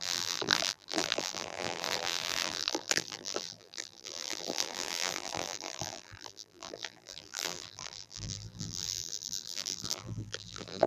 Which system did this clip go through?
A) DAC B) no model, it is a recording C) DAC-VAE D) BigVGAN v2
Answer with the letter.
D